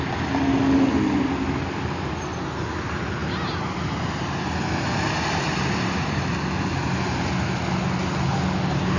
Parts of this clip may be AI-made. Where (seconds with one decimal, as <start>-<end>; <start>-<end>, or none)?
none